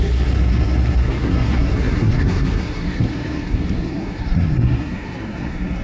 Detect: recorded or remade remade